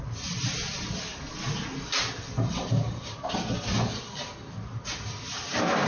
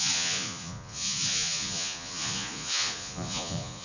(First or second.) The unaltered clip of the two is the first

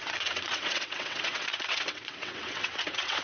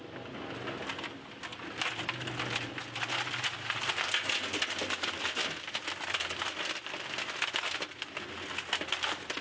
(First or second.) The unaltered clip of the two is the second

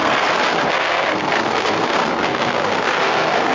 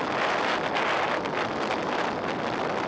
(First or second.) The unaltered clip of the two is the second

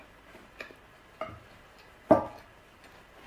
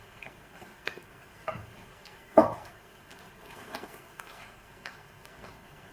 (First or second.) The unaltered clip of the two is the first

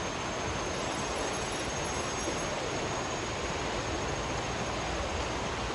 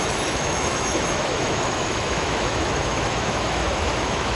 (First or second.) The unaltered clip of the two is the first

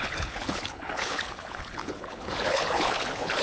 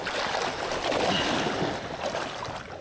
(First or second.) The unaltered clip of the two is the second